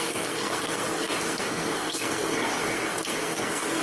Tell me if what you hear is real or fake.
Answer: fake